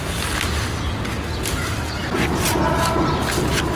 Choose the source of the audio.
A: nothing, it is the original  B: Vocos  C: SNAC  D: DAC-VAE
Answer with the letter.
A